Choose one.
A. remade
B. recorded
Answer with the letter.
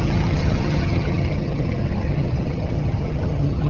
A